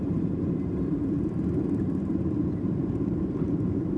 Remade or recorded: remade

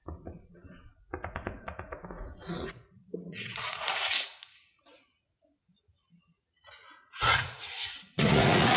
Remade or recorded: remade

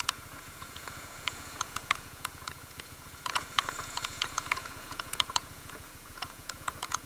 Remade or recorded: remade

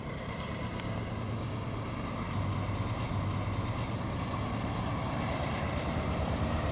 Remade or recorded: recorded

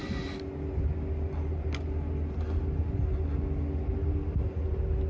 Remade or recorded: recorded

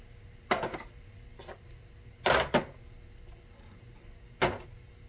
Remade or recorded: recorded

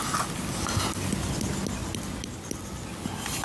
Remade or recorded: recorded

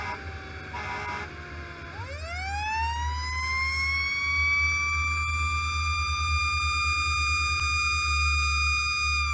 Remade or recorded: recorded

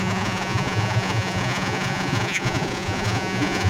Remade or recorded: remade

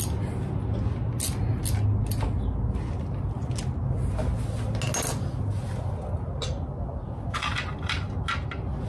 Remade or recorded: recorded